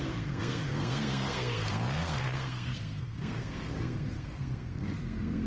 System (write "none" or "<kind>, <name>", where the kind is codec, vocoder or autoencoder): codec, SNAC